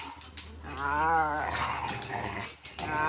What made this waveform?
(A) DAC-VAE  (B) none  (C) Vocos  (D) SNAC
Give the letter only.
B